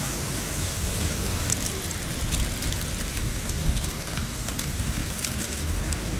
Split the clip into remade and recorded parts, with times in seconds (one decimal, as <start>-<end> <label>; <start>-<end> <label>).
0.0-1.5 remade; 1.5-3.1 recorded; 3.1-6.2 remade